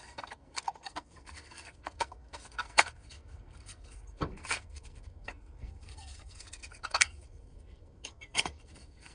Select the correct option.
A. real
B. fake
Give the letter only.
B